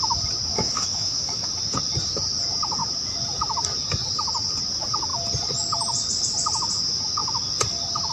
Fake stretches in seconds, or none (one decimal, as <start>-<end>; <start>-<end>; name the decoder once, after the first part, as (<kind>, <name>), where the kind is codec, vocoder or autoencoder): 0.5-1.5 (autoencoder, DAC-VAE)